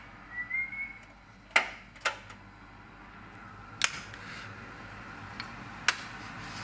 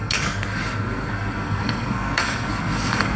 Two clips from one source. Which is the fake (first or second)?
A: second